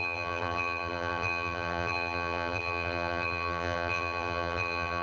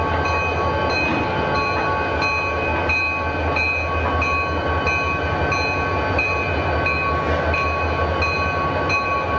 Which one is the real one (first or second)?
second